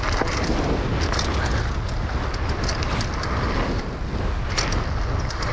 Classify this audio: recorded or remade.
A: recorded